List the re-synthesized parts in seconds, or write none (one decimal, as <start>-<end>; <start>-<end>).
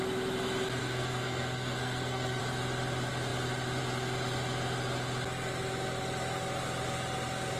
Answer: 0.8-2.4